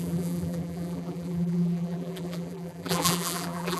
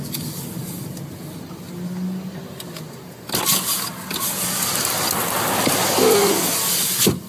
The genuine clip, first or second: second